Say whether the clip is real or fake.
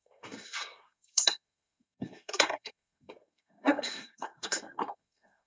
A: fake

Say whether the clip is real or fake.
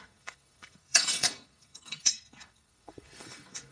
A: fake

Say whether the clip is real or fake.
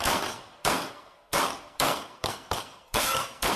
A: fake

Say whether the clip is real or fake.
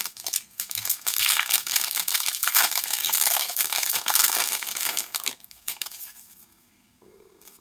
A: fake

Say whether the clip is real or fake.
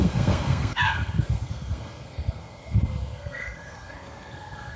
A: fake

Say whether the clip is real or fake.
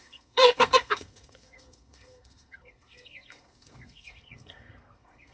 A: fake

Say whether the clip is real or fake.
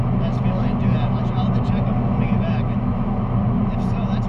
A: real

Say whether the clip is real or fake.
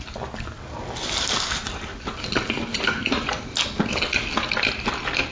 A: real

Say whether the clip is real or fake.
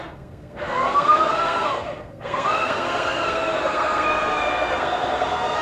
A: fake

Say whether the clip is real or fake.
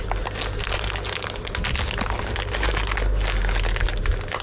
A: real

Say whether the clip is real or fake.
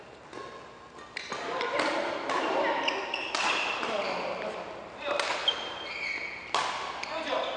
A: real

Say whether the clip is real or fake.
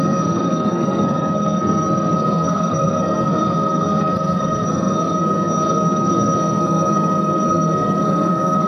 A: fake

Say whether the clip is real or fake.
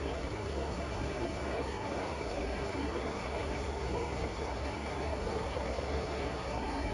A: fake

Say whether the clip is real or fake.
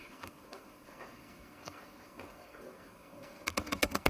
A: fake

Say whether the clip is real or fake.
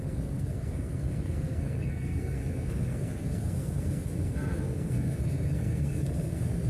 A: fake